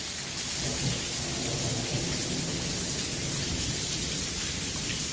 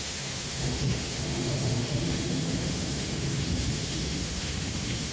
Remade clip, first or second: second